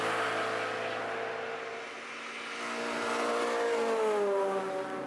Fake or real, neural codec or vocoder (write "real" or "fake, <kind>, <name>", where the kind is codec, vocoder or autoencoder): real